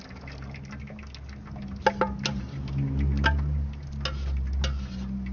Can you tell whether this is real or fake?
real